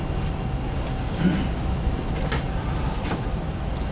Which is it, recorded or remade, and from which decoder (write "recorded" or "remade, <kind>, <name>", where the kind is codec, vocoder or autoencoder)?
recorded